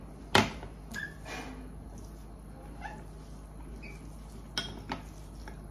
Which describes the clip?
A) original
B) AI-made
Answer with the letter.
A